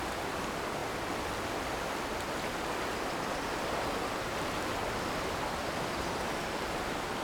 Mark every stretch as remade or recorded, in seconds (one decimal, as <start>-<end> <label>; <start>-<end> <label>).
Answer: 0.0-5.6 recorded; 5.6-6.4 remade; 6.4-7.2 recorded